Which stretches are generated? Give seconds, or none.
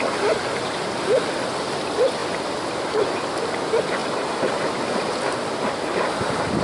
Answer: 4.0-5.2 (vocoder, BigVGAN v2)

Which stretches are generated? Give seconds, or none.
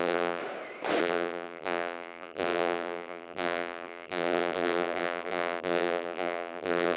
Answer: 0.0-0.4 (vocoder, BigVGAN v2); 1.0-7.0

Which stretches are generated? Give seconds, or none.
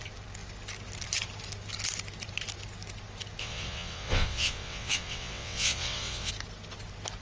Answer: 3.4-6.3 (vocoder, WaveNeXt)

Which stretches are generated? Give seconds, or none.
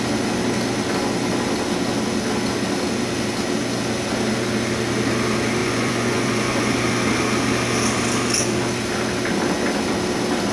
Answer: 5.6-6.7 (vocoder, Vocos)